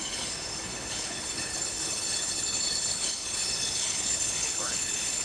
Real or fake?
fake